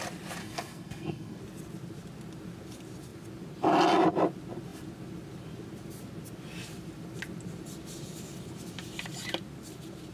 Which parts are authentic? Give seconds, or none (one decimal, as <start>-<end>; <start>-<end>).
0.0-0.4; 1.4-10.1